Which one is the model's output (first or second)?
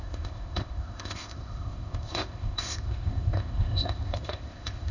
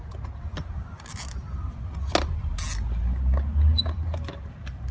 first